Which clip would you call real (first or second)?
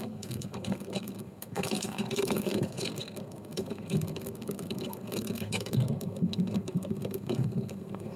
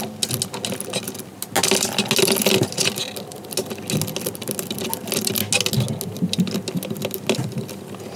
second